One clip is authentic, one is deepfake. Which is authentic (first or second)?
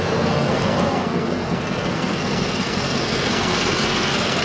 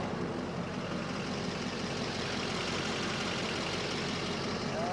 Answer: second